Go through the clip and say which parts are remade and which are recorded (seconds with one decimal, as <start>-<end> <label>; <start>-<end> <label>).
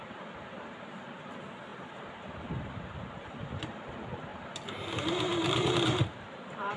0.0-1.7 recorded; 1.7-3.8 remade; 3.8-5.3 recorded; 5.3-6.8 remade